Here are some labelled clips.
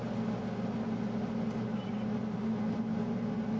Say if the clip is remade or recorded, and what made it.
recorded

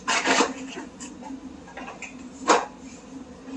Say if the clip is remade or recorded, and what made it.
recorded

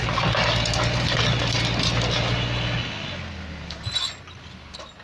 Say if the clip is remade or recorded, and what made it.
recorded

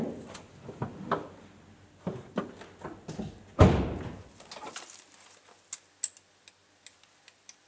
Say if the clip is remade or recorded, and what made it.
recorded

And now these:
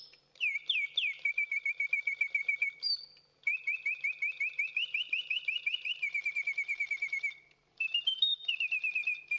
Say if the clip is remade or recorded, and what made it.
remade, vocoder, BigVGAN v2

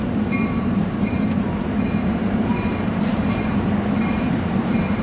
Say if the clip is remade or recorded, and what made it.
remade, vocoder, BigVGAN v2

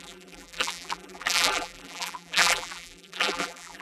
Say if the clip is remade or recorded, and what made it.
remade, vocoder, BigVGAN v2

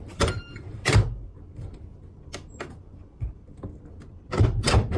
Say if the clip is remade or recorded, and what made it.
remade, vocoder, BigVGAN v2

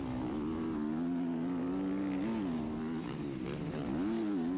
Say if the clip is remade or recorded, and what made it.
recorded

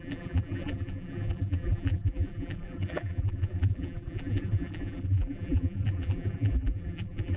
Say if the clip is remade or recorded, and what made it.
remade, vocoder, BigVGAN v2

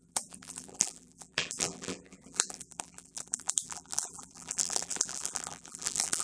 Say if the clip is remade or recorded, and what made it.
remade, vocoder, BigVGAN v2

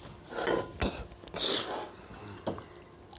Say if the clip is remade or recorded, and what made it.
recorded